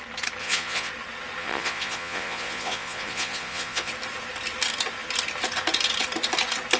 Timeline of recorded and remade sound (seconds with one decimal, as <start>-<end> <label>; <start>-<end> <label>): 0.0-0.4 recorded; 0.4-0.9 remade; 0.9-1.4 recorded; 1.4-3.9 remade; 3.9-6.8 recorded